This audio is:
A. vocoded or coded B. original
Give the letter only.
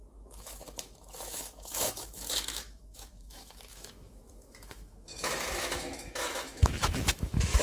A